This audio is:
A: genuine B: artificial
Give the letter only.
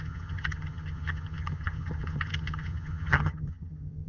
B